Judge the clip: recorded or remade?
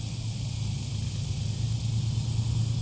recorded